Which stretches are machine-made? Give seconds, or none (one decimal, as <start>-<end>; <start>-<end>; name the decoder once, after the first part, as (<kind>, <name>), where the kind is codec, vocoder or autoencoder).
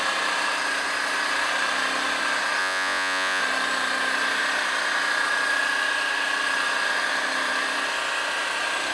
2.6-3.4 (vocoder, Vocos)